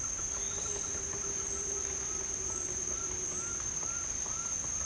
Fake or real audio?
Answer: fake